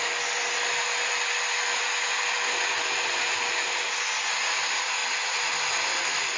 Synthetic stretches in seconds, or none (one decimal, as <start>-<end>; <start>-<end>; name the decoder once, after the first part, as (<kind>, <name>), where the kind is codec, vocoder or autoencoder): none